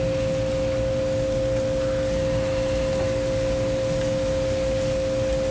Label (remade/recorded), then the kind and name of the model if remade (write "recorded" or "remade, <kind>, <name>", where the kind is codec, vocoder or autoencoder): recorded